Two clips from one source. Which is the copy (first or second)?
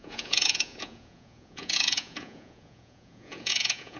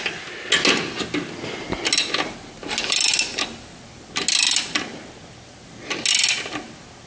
first